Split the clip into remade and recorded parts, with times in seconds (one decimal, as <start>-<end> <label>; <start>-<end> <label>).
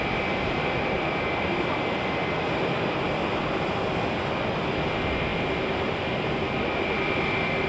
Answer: 0.0-7.7 recorded